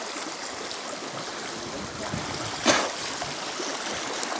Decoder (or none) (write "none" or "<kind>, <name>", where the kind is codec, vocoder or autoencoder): none